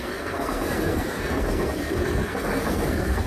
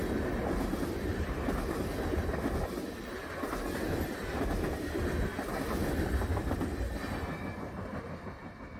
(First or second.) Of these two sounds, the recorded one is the second